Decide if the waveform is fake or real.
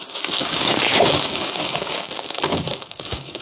fake